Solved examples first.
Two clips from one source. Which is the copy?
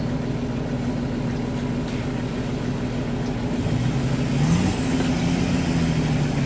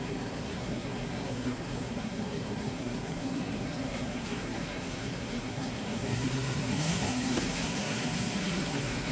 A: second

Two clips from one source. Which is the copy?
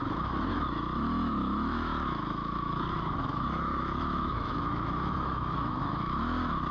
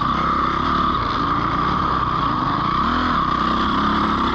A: first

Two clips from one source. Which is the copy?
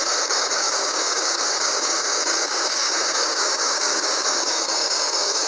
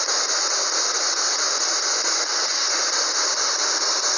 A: first